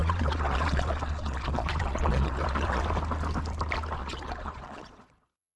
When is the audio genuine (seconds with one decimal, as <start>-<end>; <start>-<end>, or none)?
2.8-4.0